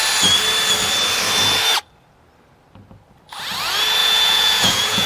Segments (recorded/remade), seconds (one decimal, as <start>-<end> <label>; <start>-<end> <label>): 0.0-4.0 recorded; 4.0-5.1 remade